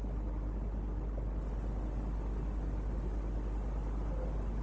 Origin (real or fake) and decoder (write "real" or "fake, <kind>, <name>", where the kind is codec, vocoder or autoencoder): real